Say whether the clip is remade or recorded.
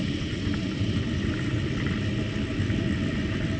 recorded